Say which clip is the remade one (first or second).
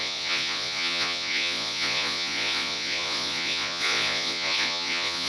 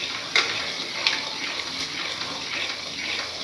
first